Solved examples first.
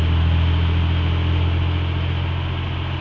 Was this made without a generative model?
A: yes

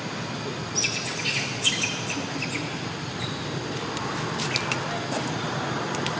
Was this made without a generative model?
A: yes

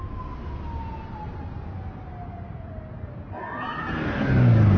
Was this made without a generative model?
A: yes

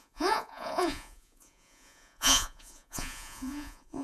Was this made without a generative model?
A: no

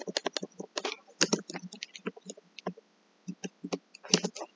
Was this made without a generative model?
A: yes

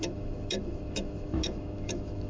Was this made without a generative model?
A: no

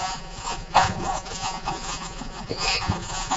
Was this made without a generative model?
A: no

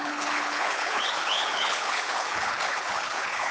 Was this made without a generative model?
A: no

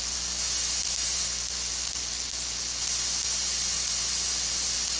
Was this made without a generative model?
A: yes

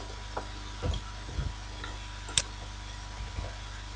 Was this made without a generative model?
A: yes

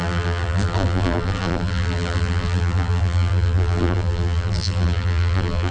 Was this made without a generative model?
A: no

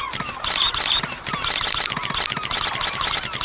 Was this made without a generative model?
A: yes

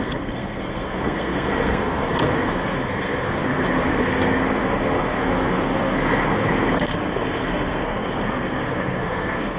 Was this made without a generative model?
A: no